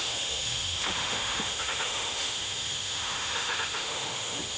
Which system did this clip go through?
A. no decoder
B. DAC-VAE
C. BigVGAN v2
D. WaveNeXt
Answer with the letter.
B